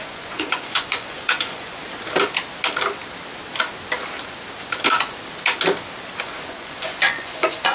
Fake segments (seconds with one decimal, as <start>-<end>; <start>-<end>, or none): 0.0-1.8; 6.2-7.7